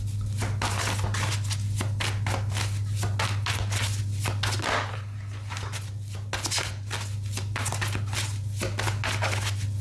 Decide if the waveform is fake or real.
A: real